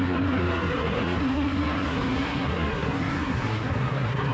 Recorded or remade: remade